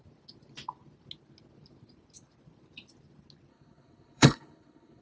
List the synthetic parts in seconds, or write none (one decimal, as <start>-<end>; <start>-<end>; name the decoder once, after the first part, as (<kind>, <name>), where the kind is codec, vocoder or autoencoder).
3.5-5.0 (codec, HILCodec)